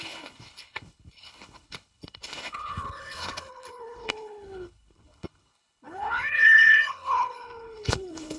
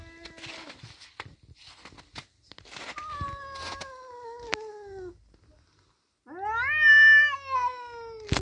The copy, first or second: first